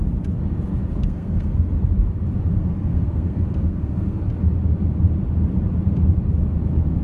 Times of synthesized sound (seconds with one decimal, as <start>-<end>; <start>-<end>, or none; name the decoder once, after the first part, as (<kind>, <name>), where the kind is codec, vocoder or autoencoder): 1.0-1.7 (codec, SNAC); 2.6-4.2